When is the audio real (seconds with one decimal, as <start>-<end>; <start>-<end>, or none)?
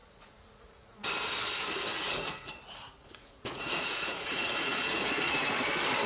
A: 1.1-1.9; 5.6-6.1